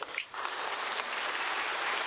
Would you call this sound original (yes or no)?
no